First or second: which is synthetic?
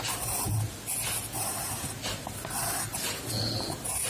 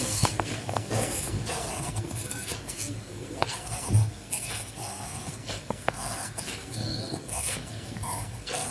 second